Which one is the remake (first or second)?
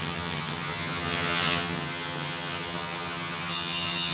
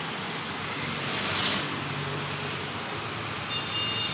first